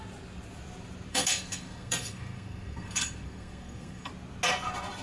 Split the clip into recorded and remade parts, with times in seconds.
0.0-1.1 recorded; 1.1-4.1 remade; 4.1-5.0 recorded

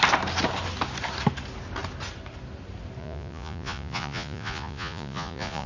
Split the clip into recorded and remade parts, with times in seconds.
0.0-3.0 recorded; 3.0-5.7 remade